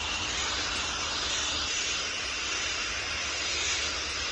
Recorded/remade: recorded